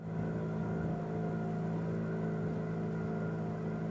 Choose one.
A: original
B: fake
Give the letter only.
A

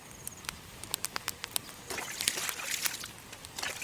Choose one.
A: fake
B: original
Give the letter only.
B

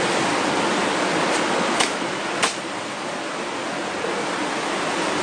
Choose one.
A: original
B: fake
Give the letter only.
A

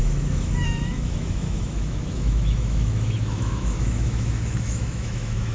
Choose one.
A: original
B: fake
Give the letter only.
B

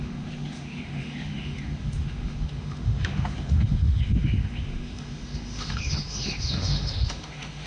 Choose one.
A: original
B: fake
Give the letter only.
B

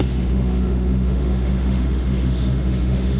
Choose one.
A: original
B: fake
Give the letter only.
B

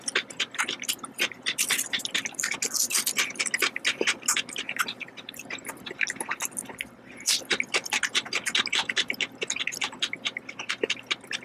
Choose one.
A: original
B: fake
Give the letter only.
A